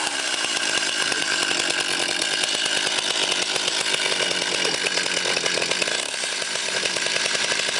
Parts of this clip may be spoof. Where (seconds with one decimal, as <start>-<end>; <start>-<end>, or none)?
0.0-1.4; 6.1-7.8